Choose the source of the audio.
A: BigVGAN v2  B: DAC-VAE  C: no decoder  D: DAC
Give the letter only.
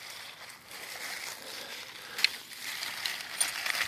C